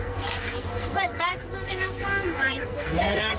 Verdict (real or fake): fake